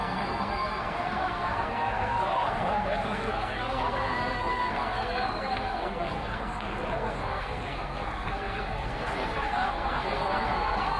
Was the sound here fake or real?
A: fake